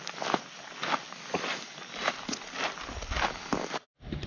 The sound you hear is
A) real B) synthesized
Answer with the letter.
A